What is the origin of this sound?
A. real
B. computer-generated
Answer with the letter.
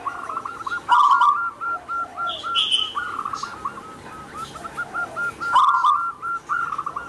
A